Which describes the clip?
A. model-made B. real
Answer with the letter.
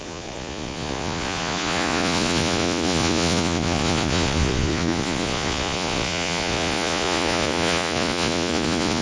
A